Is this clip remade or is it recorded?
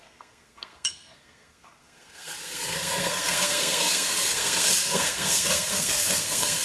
remade